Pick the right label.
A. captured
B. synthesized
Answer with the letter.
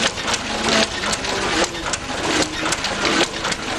A